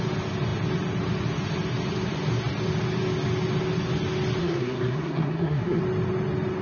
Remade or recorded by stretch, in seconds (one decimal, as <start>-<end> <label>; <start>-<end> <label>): 0.0-4.4 recorded; 4.4-5.8 remade; 5.8-6.6 recorded